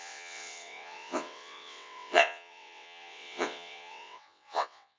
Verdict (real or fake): fake